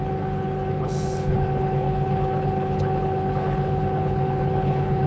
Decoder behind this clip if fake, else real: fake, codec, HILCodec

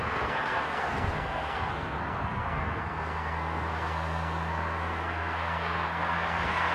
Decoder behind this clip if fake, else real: fake, codec, SNAC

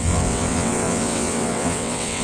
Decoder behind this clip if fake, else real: fake, vocoder, WaveNeXt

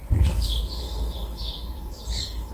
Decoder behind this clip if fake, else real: fake, codec, SNAC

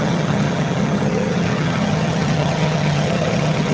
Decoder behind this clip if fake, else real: fake, vocoder, HiFi-GAN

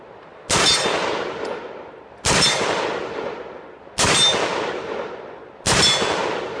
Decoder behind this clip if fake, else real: real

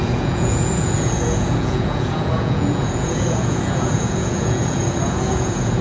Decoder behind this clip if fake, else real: fake, vocoder, Vocos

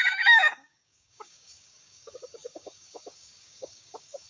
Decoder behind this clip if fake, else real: fake, codec, DAC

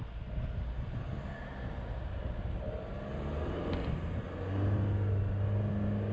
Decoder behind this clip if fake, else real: real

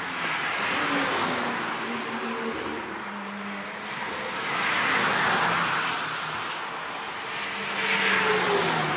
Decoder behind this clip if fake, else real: real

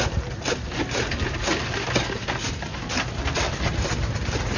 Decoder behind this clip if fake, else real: real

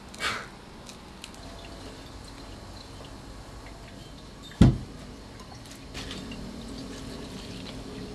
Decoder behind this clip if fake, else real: real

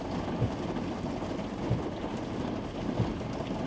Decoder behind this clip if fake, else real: real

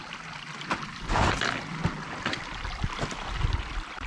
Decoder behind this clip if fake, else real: real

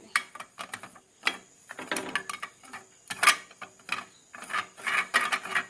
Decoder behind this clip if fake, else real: real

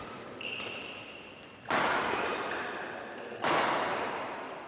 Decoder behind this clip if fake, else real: real